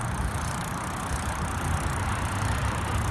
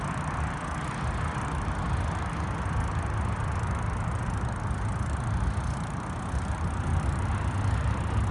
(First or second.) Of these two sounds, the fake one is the first